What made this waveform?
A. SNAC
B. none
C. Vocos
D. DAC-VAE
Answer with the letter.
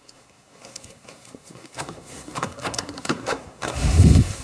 A